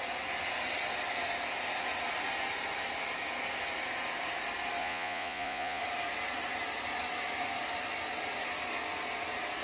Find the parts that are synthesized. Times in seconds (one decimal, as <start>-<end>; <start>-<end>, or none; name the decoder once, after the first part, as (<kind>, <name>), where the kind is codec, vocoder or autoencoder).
4.8-5.8 (vocoder, Vocos)